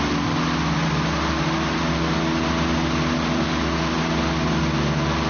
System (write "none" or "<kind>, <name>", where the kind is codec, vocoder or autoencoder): none